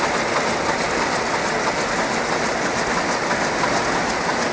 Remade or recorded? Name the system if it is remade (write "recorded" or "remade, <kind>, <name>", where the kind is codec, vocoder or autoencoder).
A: recorded